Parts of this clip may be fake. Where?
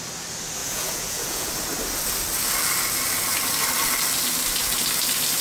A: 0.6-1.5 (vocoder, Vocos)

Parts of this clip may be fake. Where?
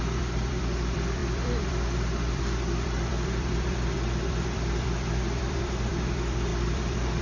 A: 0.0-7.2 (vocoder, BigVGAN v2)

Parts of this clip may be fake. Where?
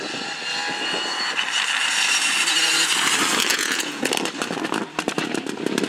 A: 3.5-4.1 (vocoder, Vocos)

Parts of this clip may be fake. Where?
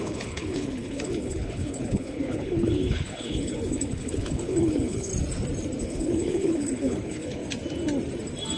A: 0.0-5.1 (codec, HILCodec); 5.8-7.4